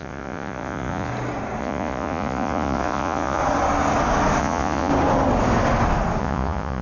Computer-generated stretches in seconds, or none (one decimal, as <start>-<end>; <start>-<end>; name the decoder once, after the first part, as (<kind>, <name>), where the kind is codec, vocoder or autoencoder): 0.0-1.1 (vocoder, Vocos); 1.6-3.4; 4.4-4.9; 6.2-6.8

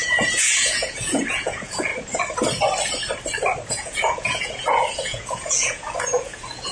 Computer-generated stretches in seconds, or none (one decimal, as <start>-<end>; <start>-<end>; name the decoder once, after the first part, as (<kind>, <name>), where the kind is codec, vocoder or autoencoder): 0.0-1.9 (vocoder, Vocos); 3.7-6.7

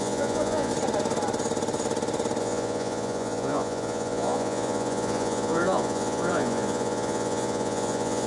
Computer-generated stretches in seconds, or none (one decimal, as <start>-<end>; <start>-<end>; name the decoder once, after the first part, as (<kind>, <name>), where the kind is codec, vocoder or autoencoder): 0.0-0.7 (vocoder, Vocos); 2.4-8.3